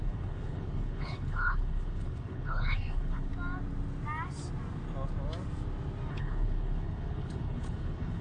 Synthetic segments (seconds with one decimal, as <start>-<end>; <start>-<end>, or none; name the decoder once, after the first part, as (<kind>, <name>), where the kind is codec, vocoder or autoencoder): 0.0-3.3 (codec, HILCodec); 6.1-8.2